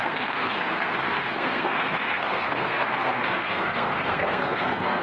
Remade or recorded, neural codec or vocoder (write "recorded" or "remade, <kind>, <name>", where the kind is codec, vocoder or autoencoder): remade, codec, SNAC